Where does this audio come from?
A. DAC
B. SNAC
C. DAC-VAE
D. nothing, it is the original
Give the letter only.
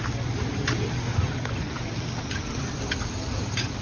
D